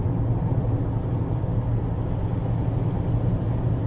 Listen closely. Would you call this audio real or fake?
real